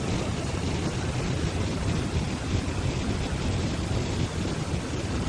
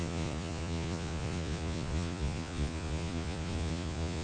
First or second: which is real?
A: first